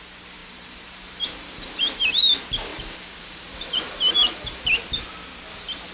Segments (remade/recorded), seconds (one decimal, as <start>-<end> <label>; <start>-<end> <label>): 0.0-0.4 recorded; 0.4-2.1 remade; 2.1-2.7 recorded; 2.7-4.6 remade; 4.6-5.9 recorded